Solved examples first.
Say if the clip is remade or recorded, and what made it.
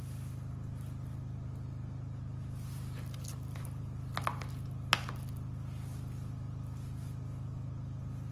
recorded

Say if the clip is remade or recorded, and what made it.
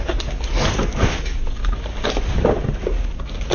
recorded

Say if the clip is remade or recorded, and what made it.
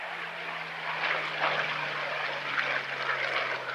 recorded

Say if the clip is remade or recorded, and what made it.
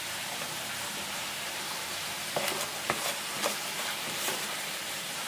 remade, vocoder, BigVGAN v2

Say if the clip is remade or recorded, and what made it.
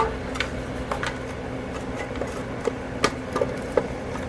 recorded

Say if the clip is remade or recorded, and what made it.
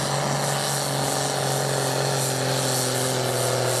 recorded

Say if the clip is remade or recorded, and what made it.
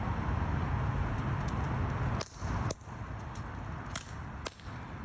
recorded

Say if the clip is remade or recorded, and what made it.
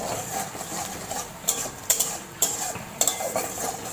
remade, vocoder, BigVGAN v2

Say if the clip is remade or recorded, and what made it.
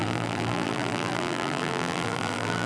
remade, vocoder, BigVGAN v2